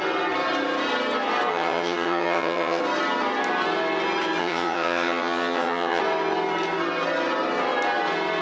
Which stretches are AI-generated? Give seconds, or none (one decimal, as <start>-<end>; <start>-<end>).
1.5-2.8; 4.4-6.0